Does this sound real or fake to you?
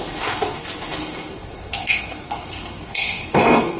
fake